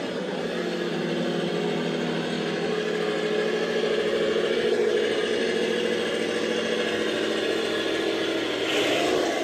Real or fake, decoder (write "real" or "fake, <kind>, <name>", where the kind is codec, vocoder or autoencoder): real